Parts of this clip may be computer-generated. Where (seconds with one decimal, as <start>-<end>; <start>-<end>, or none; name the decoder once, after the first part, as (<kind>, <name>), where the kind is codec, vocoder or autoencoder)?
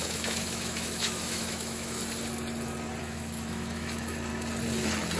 0.0-2.0 (autoencoder, DAC-VAE); 3.0-4.3